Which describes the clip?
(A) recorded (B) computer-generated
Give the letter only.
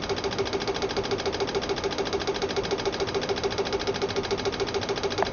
A